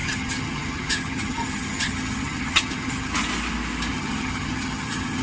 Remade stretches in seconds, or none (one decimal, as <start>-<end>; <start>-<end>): 0.0-3.1; 3.9-5.2